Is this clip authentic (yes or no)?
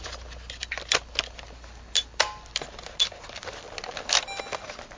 yes